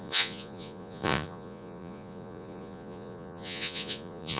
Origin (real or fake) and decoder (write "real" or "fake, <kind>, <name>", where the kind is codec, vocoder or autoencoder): fake, vocoder, Vocos